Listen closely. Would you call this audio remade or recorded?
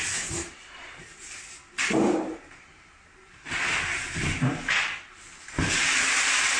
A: remade